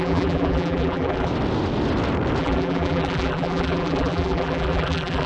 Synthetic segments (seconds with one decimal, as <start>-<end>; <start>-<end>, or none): 0.0-1.3; 2.4-5.3